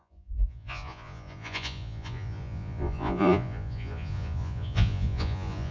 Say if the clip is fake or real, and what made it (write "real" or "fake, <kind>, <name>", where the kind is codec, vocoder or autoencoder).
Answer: fake, vocoder, Vocos